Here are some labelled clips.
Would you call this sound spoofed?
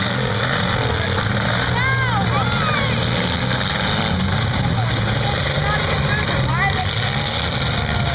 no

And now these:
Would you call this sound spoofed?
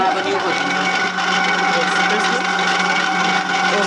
no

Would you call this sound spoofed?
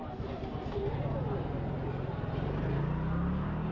no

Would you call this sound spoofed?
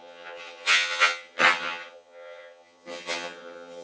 yes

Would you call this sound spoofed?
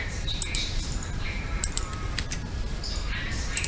yes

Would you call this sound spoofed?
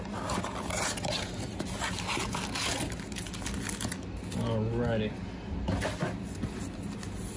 no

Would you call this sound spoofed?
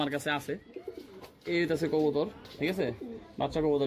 no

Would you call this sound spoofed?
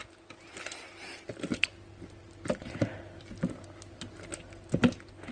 no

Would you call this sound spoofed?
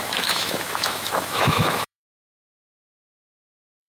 yes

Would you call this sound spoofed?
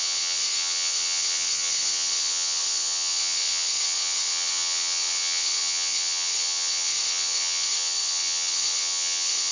yes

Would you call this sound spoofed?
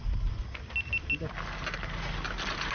no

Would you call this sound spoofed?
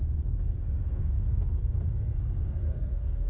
yes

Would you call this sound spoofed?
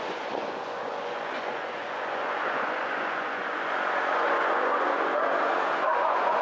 yes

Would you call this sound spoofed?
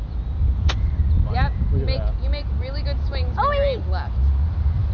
no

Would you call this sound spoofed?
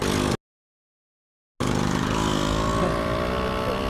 no